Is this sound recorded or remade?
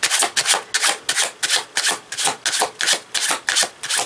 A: recorded